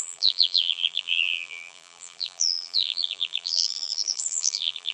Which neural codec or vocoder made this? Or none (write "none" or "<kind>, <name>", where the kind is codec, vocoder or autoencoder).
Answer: vocoder, BigVGAN v2